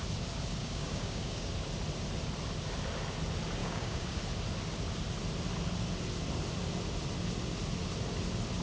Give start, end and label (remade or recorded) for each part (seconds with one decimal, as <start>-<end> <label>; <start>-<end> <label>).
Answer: 0.0-0.6 recorded; 0.6-1.5 remade; 1.5-3.6 recorded; 3.6-4.2 remade; 4.2-8.6 recorded